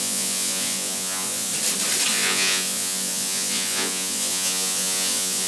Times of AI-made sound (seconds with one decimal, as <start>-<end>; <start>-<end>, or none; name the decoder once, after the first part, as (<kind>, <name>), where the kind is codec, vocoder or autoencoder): 0.0-1.5 (vocoder, Vocos); 2.1-5.5

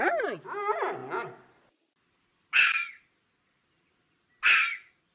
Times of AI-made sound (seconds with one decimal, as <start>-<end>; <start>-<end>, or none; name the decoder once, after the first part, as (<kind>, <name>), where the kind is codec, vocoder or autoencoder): none

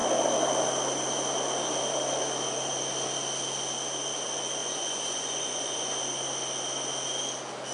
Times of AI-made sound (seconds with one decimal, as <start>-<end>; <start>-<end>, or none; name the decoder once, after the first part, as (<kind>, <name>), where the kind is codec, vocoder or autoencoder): 4.6-6.0 (vocoder, Vocos)